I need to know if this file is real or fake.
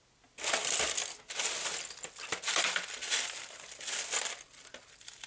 real